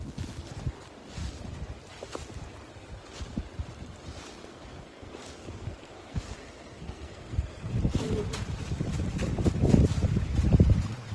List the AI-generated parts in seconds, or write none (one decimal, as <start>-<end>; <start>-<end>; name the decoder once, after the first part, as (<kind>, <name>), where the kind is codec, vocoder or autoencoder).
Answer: 4.4-7.7 (codec, SNAC)